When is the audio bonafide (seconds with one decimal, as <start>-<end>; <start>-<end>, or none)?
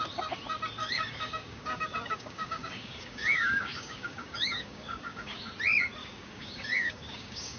0.0-0.8; 5.4-6.0